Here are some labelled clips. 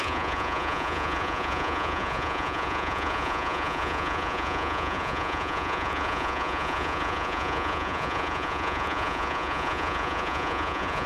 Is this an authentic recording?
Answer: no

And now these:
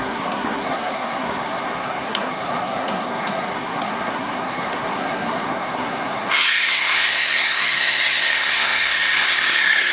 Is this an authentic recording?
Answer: no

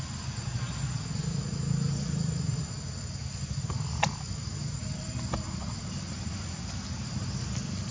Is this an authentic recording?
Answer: yes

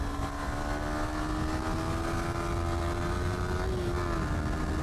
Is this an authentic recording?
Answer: yes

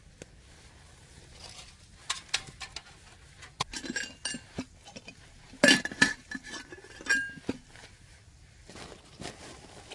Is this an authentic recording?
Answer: yes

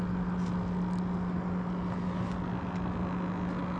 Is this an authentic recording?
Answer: yes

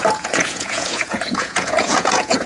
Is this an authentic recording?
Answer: no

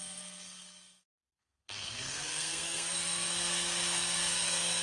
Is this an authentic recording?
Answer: no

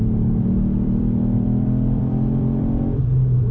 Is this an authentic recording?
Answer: no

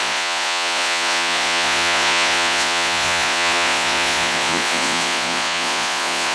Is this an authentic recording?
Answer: no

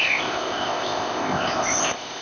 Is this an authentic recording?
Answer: no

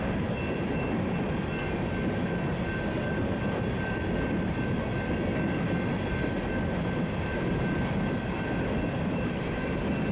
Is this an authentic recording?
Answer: yes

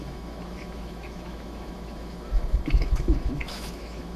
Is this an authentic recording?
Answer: no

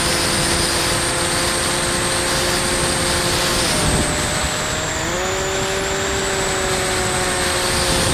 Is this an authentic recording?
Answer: yes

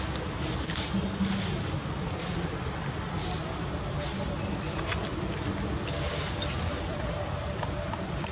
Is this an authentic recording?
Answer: yes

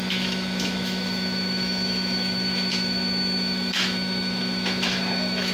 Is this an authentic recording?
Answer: no